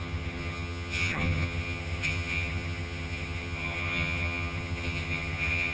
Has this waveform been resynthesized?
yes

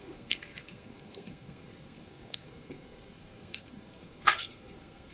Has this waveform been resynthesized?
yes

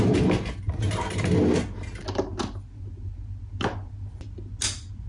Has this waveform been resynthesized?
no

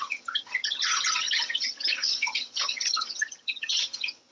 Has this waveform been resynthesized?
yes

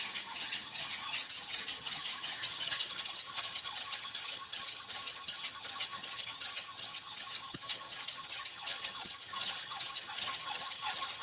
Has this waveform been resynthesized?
yes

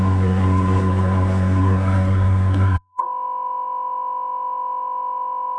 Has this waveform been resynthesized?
yes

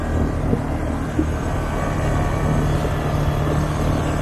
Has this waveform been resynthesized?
no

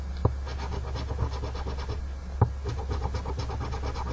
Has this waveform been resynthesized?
no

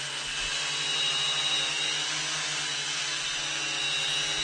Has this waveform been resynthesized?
no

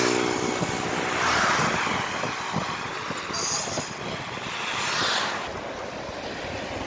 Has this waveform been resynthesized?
no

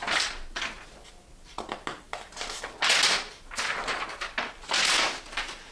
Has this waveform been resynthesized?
no